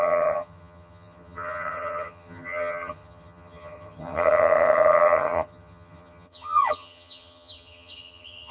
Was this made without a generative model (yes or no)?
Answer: no